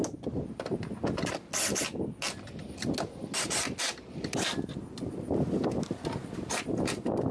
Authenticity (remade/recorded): recorded